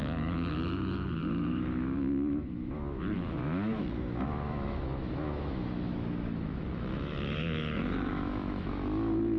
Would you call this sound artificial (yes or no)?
yes